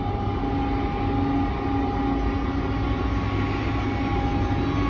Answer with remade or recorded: recorded